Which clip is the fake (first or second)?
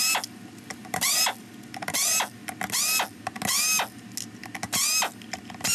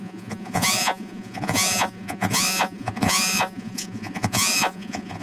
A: second